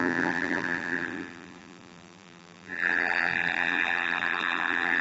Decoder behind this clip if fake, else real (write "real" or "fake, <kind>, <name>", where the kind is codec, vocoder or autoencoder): fake, vocoder, BigVGAN v2